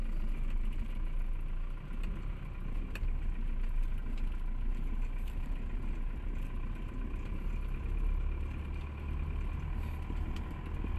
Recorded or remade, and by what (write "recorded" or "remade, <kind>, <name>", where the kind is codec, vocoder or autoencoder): recorded